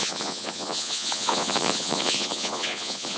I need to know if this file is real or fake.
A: fake